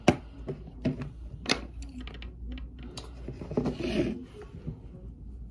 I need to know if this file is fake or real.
real